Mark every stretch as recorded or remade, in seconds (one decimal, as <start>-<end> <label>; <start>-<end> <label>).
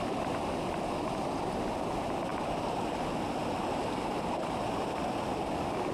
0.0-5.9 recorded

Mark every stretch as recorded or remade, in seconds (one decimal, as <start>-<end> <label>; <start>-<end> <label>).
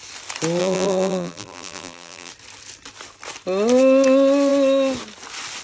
0.0-0.6 recorded; 0.6-2.3 remade; 2.3-5.6 recorded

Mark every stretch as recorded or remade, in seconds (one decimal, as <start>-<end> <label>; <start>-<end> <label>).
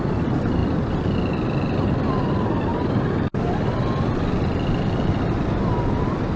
0.0-6.4 recorded